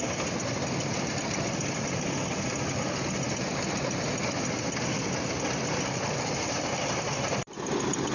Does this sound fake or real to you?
fake